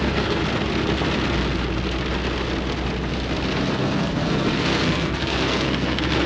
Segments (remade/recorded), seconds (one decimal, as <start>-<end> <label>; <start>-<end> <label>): 0.0-0.4 remade; 0.4-3.7 recorded; 3.7-6.3 remade